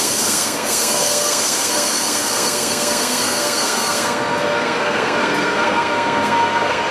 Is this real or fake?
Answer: fake